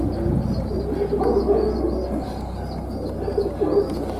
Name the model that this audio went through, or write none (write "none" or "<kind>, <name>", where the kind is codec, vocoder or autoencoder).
none